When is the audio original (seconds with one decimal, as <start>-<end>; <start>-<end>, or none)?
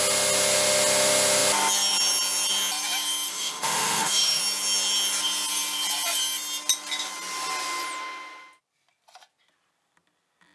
0.0-3.3; 4.4-10.5